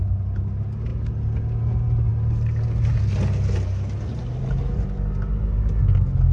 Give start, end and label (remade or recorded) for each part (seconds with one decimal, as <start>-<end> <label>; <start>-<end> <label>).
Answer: 0.0-6.3 recorded